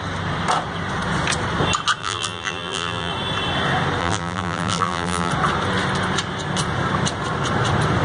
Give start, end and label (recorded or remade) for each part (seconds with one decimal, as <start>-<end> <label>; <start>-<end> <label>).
0.0-2.0 recorded; 2.0-3.1 remade; 3.1-4.0 recorded; 4.0-5.3 remade; 5.3-8.0 recorded